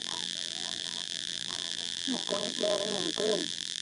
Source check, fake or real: fake